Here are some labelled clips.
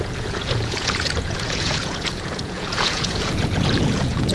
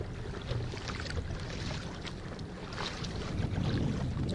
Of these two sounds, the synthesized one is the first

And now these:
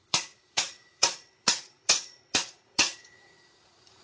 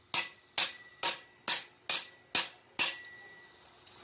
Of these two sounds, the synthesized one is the first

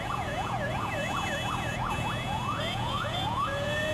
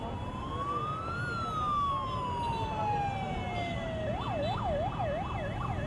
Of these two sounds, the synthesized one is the first